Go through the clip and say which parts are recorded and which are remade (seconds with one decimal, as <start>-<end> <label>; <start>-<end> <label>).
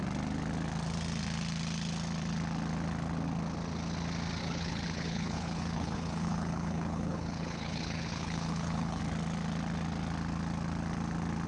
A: 0.0-4.4 recorded; 4.4-9.0 remade; 9.0-11.5 recorded